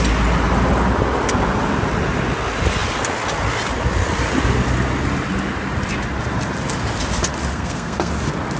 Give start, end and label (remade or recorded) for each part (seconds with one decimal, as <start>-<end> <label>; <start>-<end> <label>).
0.0-7.5 recorded; 7.5-8.1 remade; 8.1-8.6 recorded